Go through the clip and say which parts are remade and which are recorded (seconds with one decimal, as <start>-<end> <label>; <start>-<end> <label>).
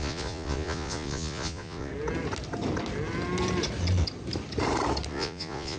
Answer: 0.0-1.9 remade; 1.9-5.1 recorded; 5.1-5.8 remade